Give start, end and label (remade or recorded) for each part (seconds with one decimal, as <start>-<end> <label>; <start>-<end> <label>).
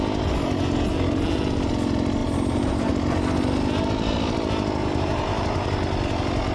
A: 0.0-2.2 recorded; 2.2-2.9 remade; 2.9-4.8 recorded; 4.8-5.7 remade; 5.7-6.5 recorded